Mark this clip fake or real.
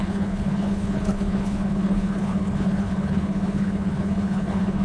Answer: fake